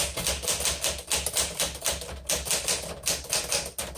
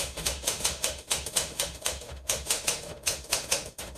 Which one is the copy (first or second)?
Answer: second